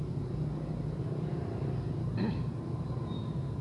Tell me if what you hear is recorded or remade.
recorded